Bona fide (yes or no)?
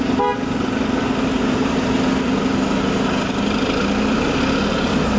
yes